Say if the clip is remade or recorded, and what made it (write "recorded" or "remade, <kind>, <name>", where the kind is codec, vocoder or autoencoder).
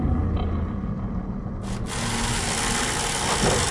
recorded